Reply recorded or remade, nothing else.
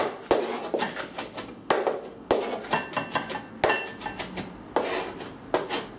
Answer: recorded